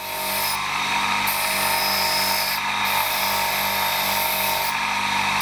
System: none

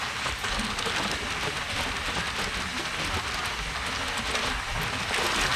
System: none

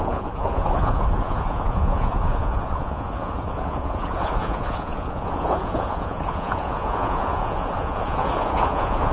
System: vocoder, Vocos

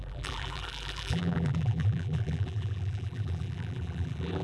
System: vocoder, BigVGAN v2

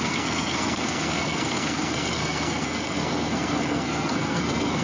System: codec, SNAC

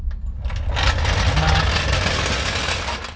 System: none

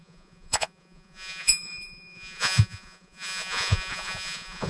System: vocoder, Vocos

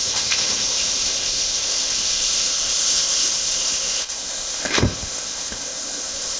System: codec, ZipCodec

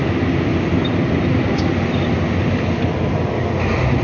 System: none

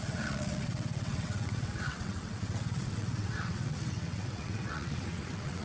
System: vocoder, WaveNeXt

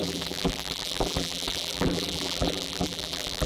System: vocoder, BigVGAN v2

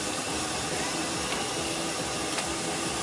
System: none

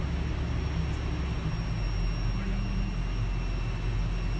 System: none